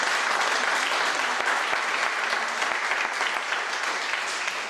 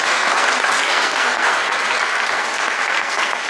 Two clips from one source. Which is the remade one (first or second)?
second